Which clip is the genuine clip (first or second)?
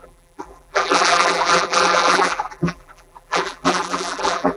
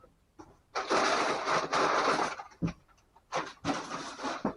second